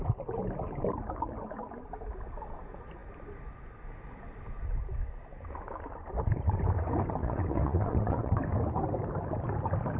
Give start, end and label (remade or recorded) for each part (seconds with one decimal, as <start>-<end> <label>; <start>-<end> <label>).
0.0-7.2 recorded; 7.2-8.4 remade; 8.4-10.0 recorded